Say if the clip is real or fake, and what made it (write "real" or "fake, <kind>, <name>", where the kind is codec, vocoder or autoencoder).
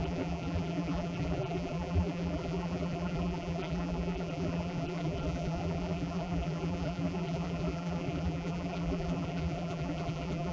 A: fake, vocoder, BigVGAN v2